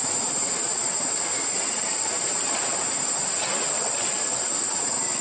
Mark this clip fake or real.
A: real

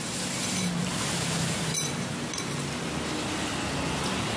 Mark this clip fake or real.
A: real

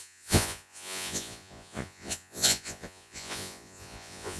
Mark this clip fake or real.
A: fake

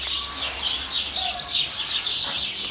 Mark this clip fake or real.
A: real